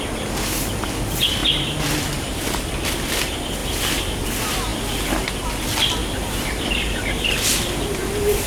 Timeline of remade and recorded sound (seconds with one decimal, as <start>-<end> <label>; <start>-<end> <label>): 0.0-3.6 recorded; 3.6-4.3 remade; 4.3-8.5 recorded